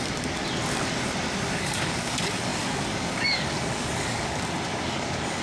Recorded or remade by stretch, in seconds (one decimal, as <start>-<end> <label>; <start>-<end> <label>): 0.0-0.4 remade; 0.4-1.5 recorded; 1.5-5.4 remade